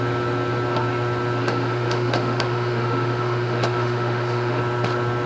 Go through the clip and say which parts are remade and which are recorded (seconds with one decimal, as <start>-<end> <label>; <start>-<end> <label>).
0.0-1.4 recorded; 1.4-4.6 remade; 4.6-5.3 recorded